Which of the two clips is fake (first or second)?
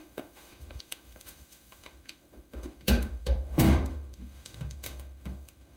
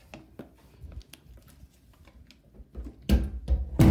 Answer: first